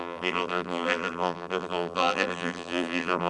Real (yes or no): no